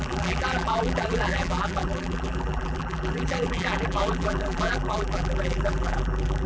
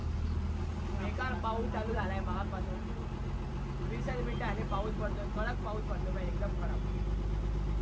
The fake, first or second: first